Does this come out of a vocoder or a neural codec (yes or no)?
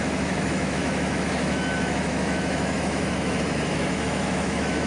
yes